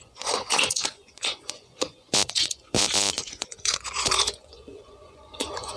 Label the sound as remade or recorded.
remade